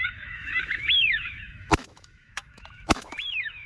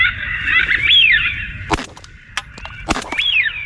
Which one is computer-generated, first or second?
first